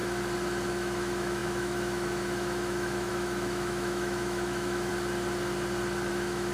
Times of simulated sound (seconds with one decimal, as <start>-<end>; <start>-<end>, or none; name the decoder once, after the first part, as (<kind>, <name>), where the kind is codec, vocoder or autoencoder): 0.7-4.9 (autoencoder, DAC-VAE); 6.1-6.5

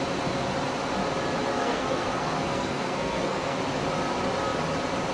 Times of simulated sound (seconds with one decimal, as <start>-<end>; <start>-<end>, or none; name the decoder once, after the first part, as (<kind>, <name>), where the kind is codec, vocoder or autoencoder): 1.5-3.6 (codec, SNAC)

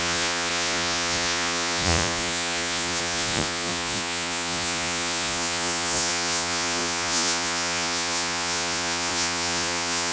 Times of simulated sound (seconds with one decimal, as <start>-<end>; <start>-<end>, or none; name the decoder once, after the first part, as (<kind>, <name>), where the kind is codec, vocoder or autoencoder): 0.0-10.1 (vocoder, Vocos)

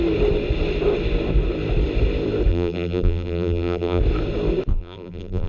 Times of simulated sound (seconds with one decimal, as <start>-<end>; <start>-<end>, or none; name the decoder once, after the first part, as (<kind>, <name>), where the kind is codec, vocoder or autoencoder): 2.5-4.0 (vocoder, BigVGAN v2); 4.7-5.5